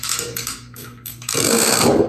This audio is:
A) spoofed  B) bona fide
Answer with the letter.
A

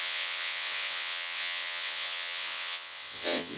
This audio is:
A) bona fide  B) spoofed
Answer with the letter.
B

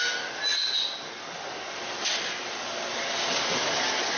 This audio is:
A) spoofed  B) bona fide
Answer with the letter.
B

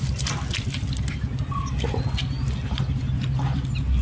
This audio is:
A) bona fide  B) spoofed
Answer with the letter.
A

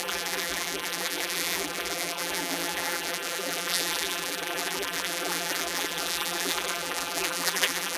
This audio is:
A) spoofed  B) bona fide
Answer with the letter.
A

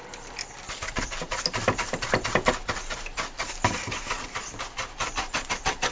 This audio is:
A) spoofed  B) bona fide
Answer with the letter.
A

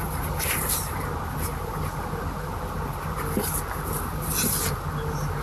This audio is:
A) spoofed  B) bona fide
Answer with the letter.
B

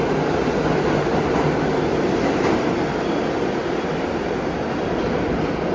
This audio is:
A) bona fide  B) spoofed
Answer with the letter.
A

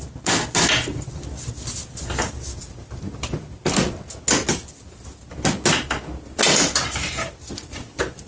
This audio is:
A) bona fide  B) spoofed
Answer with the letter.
A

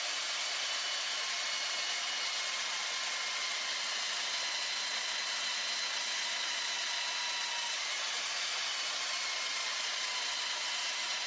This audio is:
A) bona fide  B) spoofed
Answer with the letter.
A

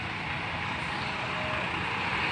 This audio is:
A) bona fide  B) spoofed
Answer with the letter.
A